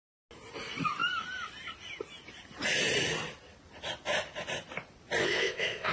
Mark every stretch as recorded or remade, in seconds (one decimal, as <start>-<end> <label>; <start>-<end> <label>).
0.0-5.2 recorded; 5.2-5.9 remade